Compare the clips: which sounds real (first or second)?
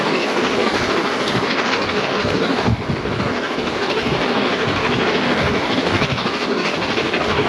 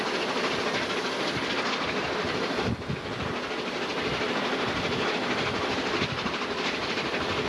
second